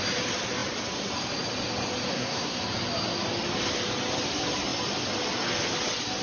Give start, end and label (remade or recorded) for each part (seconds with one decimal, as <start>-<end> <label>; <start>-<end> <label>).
0.0-2.1 recorded; 2.1-2.6 remade; 2.6-6.2 recorded